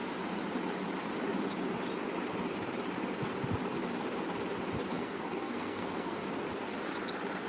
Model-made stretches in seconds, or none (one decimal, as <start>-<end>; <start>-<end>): 4.9-6.3